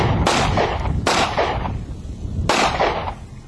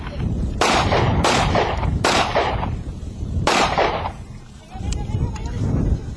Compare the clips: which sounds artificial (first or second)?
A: second